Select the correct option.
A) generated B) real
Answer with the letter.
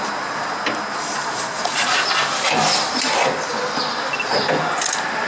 B